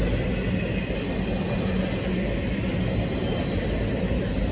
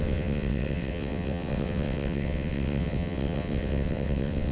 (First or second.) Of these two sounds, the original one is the first